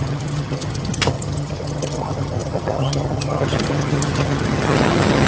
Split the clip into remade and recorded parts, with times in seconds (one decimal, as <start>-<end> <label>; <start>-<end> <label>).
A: 0.0-5.3 remade